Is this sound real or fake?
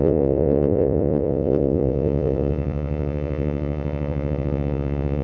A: fake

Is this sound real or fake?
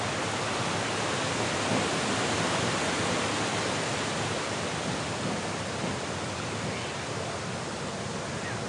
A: real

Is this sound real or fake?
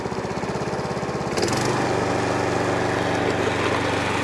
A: real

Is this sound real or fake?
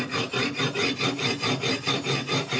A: real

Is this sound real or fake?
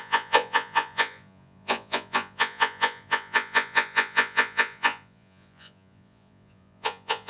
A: fake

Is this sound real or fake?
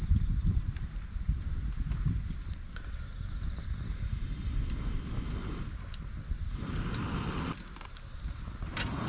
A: real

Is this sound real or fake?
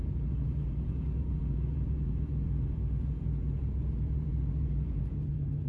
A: fake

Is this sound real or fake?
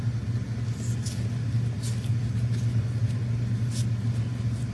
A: real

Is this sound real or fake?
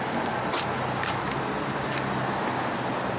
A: real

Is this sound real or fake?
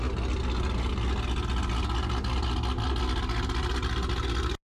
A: real